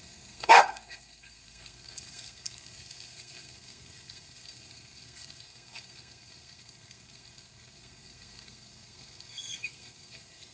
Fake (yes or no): yes